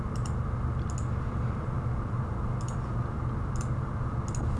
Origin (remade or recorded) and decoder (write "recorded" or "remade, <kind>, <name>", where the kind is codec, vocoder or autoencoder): recorded